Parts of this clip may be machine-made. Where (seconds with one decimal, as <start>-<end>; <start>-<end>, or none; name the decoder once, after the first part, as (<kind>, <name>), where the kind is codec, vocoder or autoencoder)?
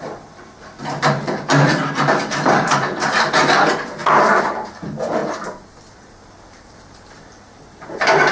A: 0.0-5.2 (vocoder, BigVGAN v2); 5.9-8.3